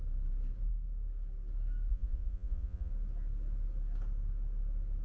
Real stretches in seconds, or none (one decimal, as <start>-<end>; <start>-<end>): 0.0-1.9; 2.9-5.0